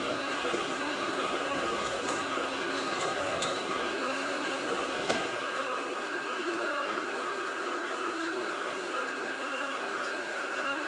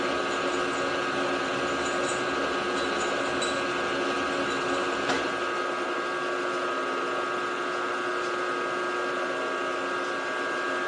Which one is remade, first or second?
first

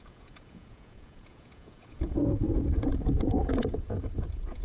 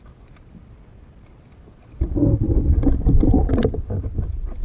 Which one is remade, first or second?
first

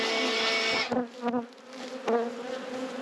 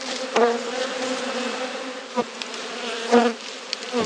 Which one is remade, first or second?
second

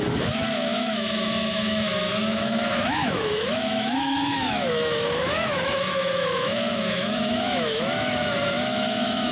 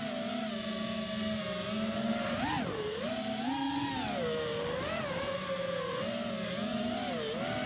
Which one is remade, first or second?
first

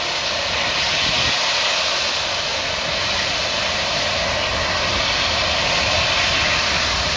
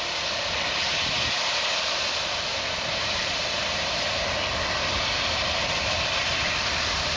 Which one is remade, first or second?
second